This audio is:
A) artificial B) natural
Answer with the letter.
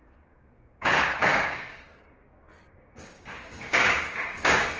A